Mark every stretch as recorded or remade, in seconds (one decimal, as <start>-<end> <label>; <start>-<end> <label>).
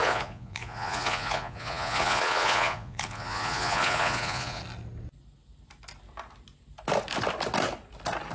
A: 0.0-4.6 remade; 4.6-8.3 recorded